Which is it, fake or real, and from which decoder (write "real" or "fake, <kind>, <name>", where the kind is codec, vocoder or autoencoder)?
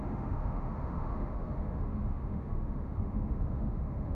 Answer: fake, autoencoder, DAC-VAE